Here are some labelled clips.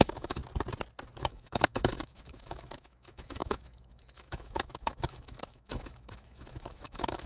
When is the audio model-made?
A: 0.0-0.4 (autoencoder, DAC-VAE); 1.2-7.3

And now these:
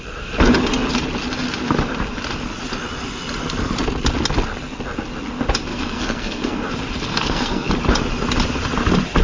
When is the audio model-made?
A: 5.7-6.6 (codec, SNAC); 7.1-7.7

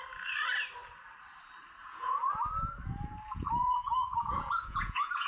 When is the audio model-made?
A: 1.8-2.4 (vocoder, Vocos); 3.4-5.3

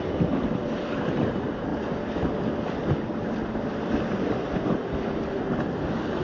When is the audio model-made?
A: none

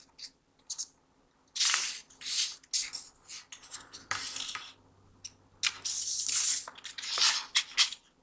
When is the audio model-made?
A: none